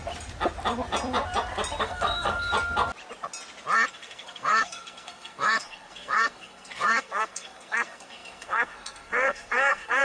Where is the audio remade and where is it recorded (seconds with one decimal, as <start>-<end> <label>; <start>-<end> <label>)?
0.0-1.8 recorded; 1.8-2.5 remade; 2.5-3.9 recorded; 3.9-10.0 remade